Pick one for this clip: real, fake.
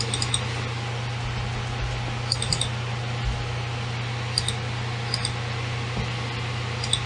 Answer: real